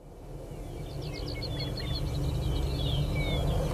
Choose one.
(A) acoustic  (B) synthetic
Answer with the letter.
A